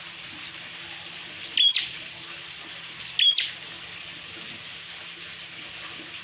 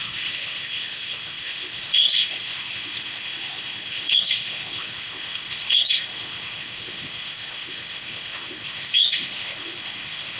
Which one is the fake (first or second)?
second